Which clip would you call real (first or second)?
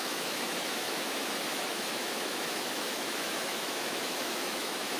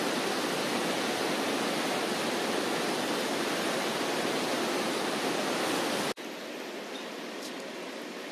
second